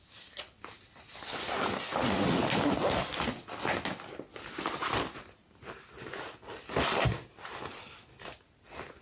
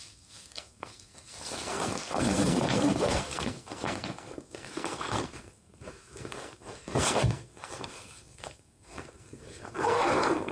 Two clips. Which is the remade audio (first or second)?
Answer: second